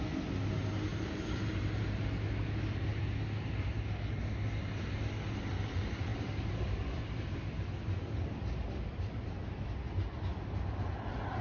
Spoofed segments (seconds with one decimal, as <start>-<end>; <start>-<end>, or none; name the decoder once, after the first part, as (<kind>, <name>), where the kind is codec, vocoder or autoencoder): 0.9-2.0 (vocoder, BigVGAN v2); 2.9-3.5; 6.1-7.0